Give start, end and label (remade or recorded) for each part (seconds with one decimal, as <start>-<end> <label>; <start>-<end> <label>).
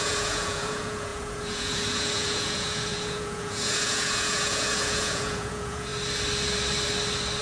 0.0-5.9 remade; 5.9-7.4 recorded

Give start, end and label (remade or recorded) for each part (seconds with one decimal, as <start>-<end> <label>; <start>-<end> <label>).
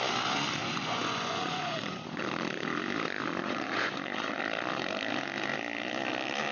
0.0-0.6 recorded; 0.6-2.2 remade; 2.2-3.4 recorded; 3.4-4.4 remade; 4.4-6.5 recorded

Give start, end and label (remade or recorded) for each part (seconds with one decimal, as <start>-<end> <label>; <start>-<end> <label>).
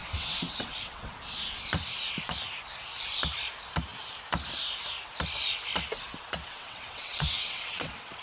0.0-1.1 remade; 1.1-6.5 recorded; 6.5-8.2 remade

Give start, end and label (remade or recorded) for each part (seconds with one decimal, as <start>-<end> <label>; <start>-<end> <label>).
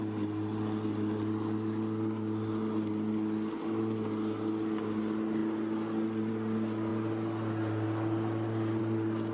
0.0-9.3 recorded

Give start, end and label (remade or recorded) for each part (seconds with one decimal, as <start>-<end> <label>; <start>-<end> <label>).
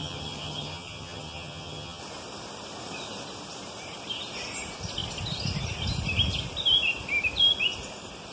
0.0-2.0 remade; 2.0-8.3 recorded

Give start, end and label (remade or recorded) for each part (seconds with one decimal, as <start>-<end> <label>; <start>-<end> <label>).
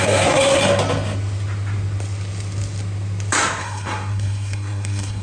0.0-0.6 remade; 0.6-3.6 recorded; 3.6-5.2 remade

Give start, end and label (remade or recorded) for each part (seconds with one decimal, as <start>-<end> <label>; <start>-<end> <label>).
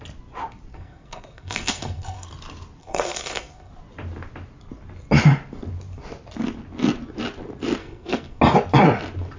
0.0-0.7 recorded; 0.7-2.3 remade; 2.3-2.8 recorded; 2.8-3.7 remade; 3.7-7.8 recorded; 7.8-8.4 remade; 8.4-9.4 recorded